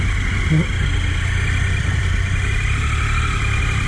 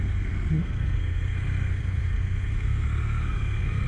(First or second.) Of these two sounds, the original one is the first